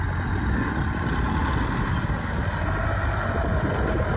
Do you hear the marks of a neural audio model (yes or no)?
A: no